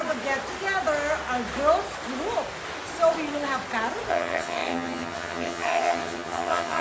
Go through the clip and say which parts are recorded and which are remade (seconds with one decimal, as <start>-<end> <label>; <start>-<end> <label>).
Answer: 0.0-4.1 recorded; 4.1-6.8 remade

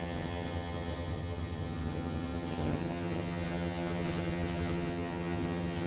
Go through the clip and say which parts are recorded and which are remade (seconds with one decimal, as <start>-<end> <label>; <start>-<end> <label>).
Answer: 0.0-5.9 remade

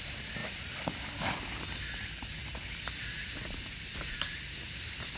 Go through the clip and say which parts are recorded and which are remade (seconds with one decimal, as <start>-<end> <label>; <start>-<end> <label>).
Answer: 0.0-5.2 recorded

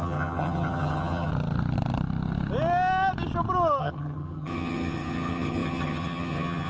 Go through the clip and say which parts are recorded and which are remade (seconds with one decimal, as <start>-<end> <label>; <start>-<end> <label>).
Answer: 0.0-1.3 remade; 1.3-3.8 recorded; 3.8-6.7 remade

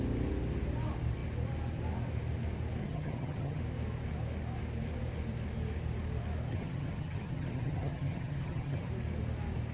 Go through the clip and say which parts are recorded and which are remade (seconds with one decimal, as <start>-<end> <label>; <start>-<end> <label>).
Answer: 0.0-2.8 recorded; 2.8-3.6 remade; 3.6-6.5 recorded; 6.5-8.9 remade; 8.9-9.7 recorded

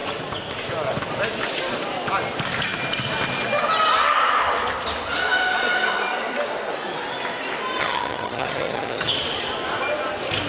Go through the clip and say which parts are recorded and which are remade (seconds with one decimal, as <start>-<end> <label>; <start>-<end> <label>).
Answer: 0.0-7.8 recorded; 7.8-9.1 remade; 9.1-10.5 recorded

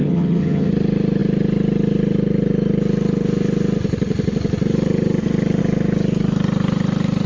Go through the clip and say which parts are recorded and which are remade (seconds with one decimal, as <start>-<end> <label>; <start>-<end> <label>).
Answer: 0.0-0.7 remade; 0.7-7.3 recorded

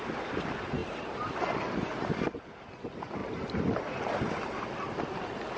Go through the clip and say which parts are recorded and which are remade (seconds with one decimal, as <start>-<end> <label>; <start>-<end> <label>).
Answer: 0.0-5.6 recorded